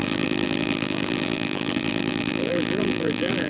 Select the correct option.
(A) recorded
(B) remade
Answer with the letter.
B